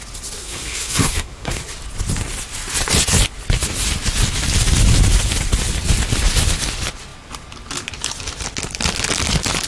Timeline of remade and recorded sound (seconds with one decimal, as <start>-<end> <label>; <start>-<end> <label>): 0.0-0.4 recorded; 0.4-1.6 remade; 1.6-9.7 recorded